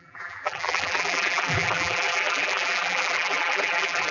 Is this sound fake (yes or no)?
yes